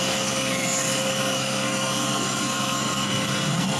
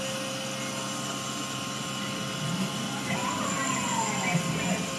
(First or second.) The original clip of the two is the second